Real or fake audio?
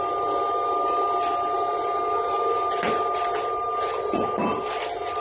real